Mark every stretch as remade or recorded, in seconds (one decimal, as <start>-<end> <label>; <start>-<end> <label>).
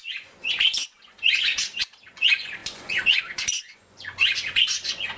0.0-1.5 remade; 1.5-2.1 recorded; 2.1-5.2 remade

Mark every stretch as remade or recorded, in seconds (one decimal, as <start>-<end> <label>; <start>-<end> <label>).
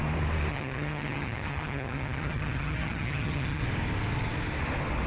0.0-0.5 recorded; 0.5-3.6 remade; 3.6-5.1 recorded